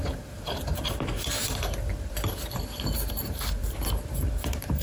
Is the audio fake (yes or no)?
yes